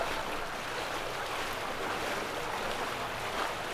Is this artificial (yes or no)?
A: no